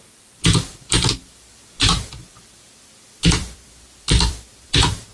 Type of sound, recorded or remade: remade